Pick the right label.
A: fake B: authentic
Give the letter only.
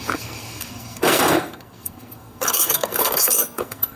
A